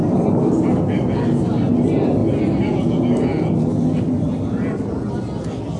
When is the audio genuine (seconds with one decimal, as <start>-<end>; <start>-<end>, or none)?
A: 0.0-5.8